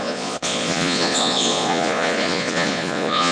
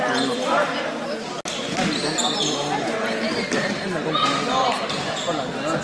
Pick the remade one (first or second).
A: first